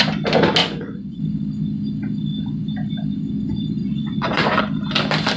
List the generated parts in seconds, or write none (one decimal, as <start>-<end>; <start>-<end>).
0.6-1.2; 3.8-4.6